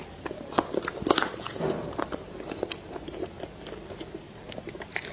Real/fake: real